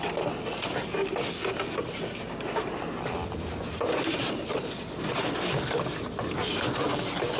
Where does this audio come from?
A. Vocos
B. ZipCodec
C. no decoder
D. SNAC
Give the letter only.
C